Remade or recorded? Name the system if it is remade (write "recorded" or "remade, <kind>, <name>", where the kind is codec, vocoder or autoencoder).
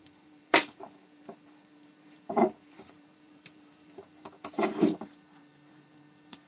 remade, vocoder, BigVGAN v2